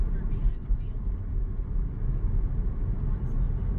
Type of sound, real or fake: real